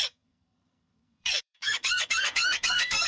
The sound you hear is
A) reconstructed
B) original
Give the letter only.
A